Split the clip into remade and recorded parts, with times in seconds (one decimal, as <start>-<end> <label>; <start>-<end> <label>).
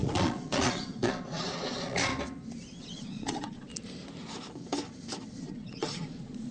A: 0.0-2.1 remade; 2.1-2.8 recorded; 2.8-3.7 remade; 3.7-5.4 recorded; 5.4-6.5 remade